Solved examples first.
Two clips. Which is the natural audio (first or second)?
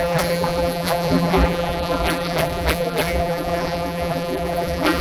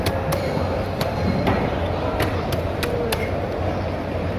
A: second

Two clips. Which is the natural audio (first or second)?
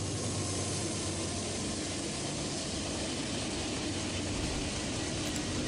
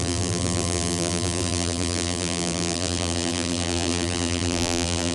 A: first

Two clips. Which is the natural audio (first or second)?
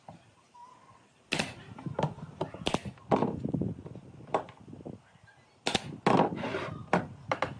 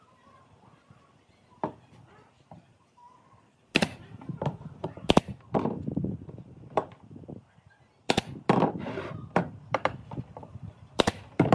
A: first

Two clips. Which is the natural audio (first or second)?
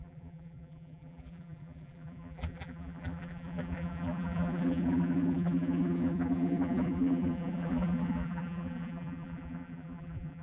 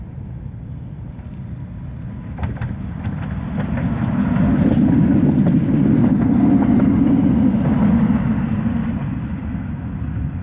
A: second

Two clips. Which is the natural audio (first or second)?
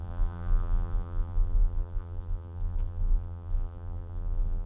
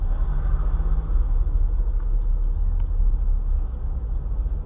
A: second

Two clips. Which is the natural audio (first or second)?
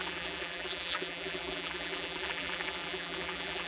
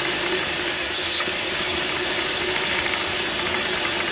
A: second